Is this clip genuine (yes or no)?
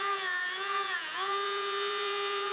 no